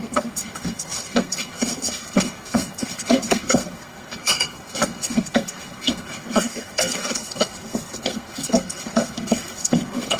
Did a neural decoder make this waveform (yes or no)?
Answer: yes